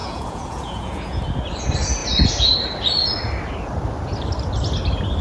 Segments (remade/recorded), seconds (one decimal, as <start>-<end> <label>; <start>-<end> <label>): 0.0-1.2 remade; 1.2-5.2 recorded